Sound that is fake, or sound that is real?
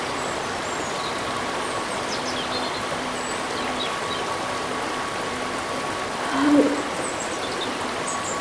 real